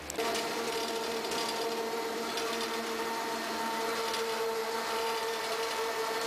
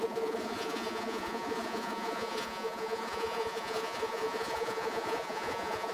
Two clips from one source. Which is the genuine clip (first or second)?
first